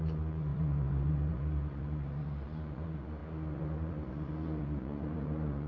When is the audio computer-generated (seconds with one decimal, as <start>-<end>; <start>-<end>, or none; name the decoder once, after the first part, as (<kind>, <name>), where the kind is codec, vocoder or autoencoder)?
0.0-5.7 (vocoder, Vocos)